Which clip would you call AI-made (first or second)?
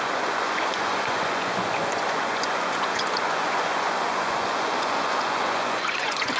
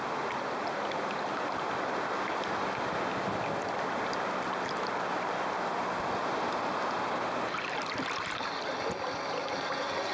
first